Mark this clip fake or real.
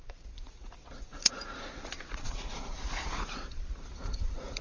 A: fake